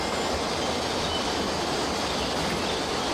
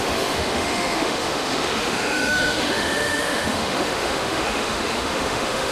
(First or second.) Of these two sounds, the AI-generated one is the second